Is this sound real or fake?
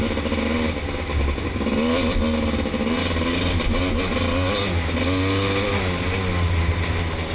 real